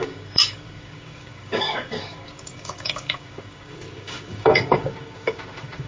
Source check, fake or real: fake